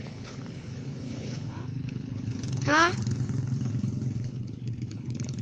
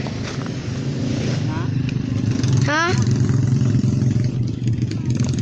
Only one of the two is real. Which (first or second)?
second